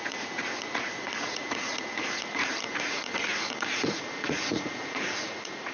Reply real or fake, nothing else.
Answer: fake